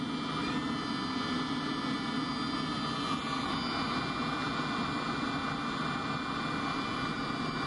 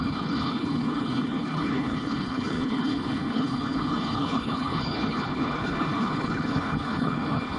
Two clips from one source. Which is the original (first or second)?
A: first